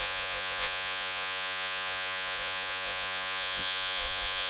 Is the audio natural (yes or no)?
no